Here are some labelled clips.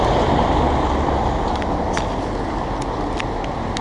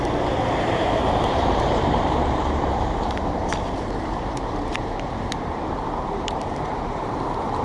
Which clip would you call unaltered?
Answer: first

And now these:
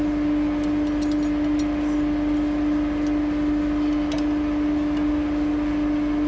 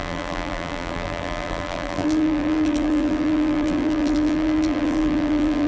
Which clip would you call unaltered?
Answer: first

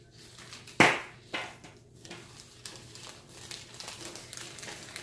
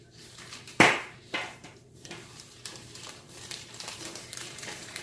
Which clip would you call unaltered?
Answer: first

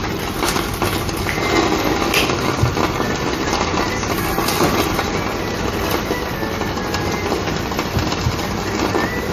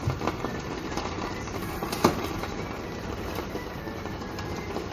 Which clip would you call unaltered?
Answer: first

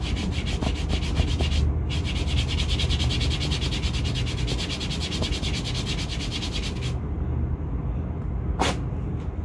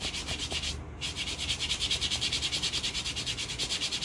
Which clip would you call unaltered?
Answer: first